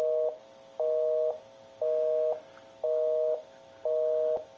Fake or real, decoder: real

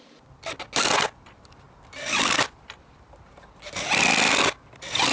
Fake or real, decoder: real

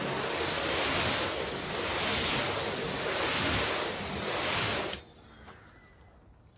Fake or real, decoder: real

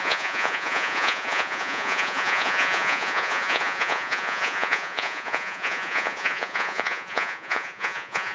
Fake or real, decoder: fake, vocoder, Vocos